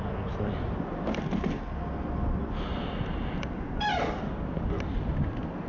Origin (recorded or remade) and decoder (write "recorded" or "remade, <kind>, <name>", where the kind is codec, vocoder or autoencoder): recorded